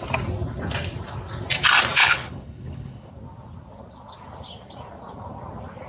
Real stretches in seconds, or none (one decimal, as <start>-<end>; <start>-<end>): 0.0-2.0; 3.1-5.9